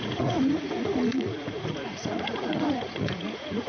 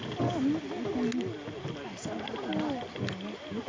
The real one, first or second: second